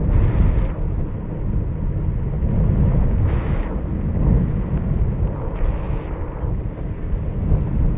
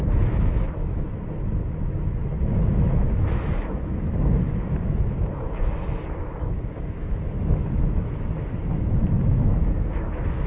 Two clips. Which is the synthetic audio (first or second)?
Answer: second